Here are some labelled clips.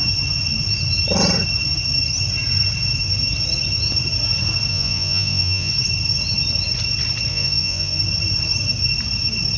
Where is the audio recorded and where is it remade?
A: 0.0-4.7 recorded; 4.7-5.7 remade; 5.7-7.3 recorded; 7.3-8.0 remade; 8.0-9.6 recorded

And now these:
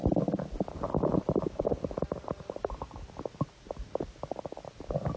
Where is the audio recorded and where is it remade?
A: 0.0-3.1 remade; 3.1-5.2 recorded

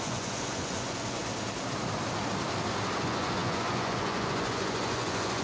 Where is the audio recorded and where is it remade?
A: 0.0-1.2 remade; 1.2-3.0 recorded; 3.0-5.4 remade

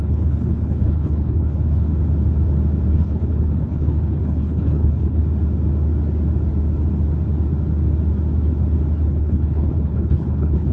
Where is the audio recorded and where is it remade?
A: 0.0-1.9 remade; 1.9-2.9 recorded; 2.9-5.2 remade; 5.2-9.1 recorded; 9.1-10.7 remade

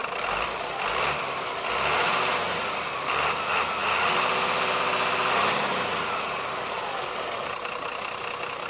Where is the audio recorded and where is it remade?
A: 0.0-1.2 remade; 1.2-8.7 recorded

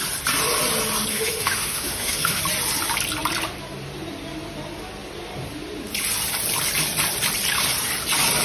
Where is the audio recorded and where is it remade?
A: 0.0-1.1 recorded; 1.1-2.4 remade; 2.4-8.4 recorded

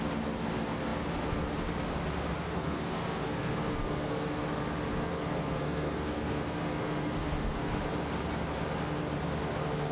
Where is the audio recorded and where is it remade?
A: 0.0-2.3 recorded; 2.3-4.4 remade; 4.4-4.9 recorded; 4.9-7.8 remade; 7.8-9.9 recorded

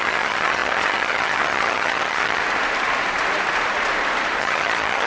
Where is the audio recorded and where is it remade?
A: 0.0-2.4 remade; 2.4-4.4 recorded; 4.4-5.1 remade